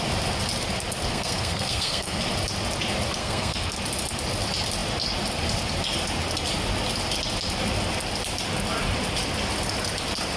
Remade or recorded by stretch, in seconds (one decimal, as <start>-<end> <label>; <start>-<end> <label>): 0.0-1.1 recorded; 1.1-2.2 remade; 2.2-3.2 recorded; 3.2-3.8 remade; 3.8-10.4 recorded